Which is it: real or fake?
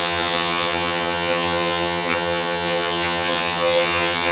fake